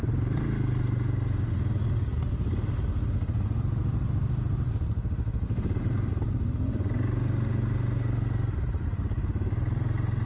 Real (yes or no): yes